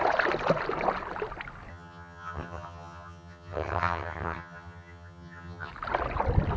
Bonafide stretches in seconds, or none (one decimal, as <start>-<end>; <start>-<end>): 0.0-1.7; 5.7-6.6